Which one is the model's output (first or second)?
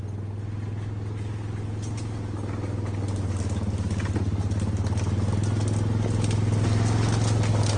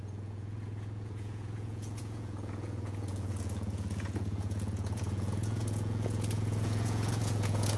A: second